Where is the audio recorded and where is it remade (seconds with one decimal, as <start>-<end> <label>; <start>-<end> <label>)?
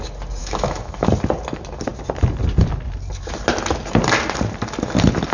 0.0-0.4 recorded; 0.4-1.1 remade; 1.1-5.3 recorded